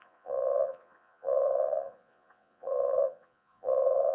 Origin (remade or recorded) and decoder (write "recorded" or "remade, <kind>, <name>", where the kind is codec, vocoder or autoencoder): remade, vocoder, Vocos